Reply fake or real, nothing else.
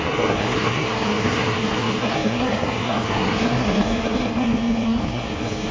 fake